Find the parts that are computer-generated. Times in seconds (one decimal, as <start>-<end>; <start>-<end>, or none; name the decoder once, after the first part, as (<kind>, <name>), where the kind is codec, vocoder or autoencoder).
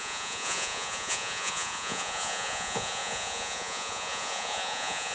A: 0.0-5.1 (vocoder, Vocos)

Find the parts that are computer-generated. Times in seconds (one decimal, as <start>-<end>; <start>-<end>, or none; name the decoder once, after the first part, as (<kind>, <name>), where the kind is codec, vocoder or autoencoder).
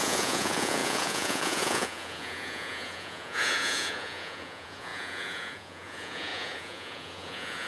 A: 0.0-7.7 (vocoder, Vocos)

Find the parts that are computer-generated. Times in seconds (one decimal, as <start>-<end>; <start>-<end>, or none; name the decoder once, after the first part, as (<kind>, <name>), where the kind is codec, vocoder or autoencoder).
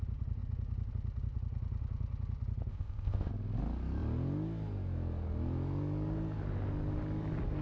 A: 2.7-3.3 (codec, ZipCodec)